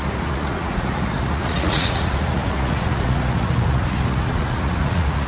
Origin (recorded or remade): remade